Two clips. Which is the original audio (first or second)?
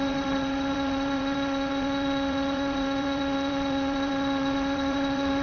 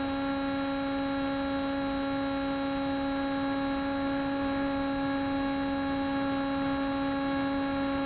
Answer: second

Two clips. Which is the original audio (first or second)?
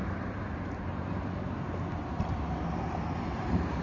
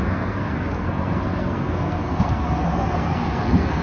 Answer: first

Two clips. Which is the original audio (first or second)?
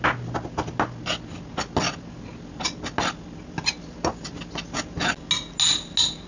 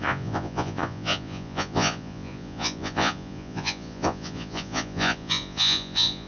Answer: first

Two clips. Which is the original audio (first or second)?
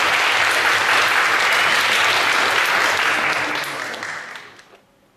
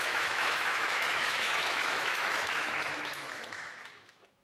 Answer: first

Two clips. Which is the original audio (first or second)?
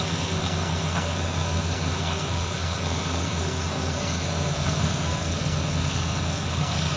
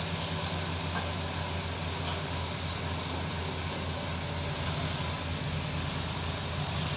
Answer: second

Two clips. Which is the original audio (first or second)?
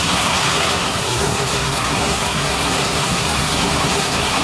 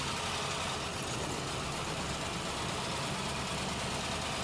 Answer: second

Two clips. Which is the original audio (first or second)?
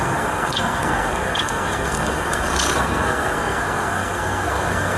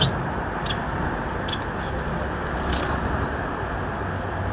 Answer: second